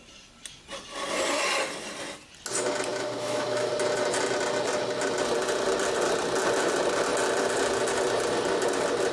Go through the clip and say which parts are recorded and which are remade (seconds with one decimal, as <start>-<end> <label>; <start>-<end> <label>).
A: 0.0-2.9 recorded; 2.9-3.7 remade; 3.7-9.1 recorded